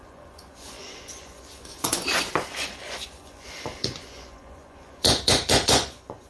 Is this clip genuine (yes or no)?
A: no